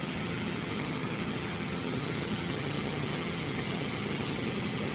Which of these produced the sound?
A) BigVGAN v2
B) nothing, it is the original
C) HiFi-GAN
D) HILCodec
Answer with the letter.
C